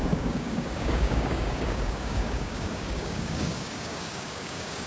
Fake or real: fake